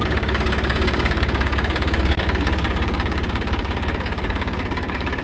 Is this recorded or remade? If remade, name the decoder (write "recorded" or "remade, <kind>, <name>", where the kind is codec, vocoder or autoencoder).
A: remade, codec, DAC